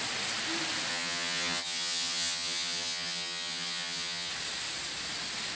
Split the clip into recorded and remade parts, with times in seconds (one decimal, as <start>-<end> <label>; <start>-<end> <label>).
0.0-0.9 recorded; 0.9-4.3 remade; 4.3-5.6 recorded